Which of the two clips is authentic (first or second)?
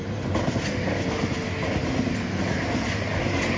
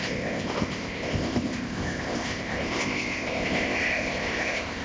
first